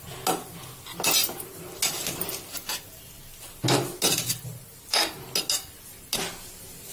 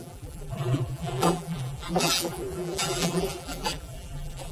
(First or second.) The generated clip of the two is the second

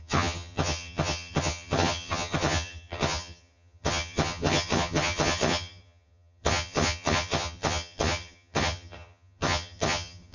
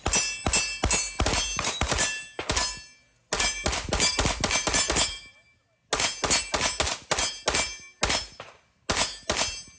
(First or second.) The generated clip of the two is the first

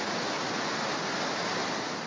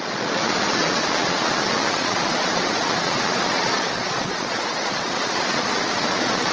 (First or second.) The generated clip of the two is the second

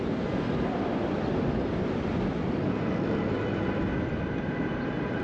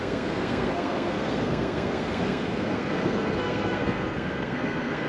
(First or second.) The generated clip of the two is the second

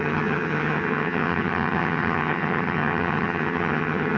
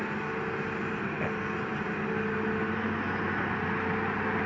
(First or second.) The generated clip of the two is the first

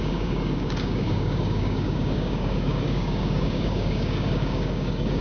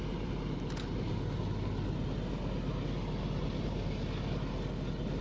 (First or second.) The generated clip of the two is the first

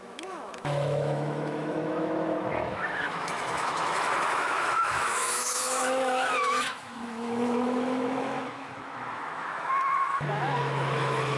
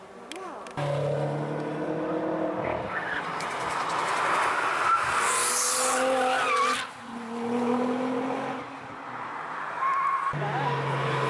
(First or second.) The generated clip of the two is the first